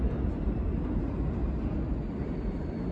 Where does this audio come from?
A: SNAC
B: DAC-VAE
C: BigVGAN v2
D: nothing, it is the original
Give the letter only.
D